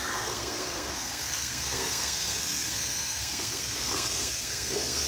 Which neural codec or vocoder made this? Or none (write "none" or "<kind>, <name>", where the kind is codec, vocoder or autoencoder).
codec, SNAC